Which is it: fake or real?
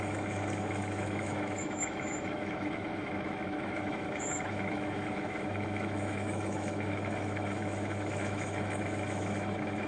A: fake